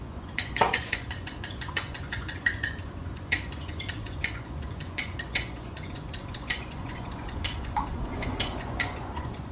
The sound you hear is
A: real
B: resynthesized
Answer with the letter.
B